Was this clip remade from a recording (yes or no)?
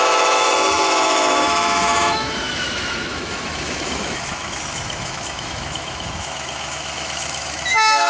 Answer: yes